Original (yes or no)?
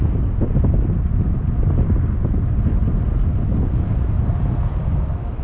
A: yes